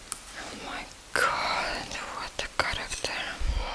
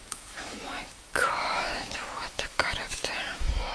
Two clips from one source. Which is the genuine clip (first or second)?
first